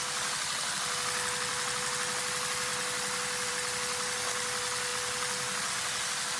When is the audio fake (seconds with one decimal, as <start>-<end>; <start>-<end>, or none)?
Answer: none